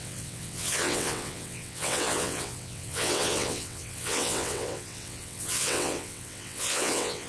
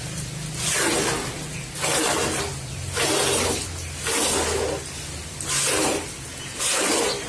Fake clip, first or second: first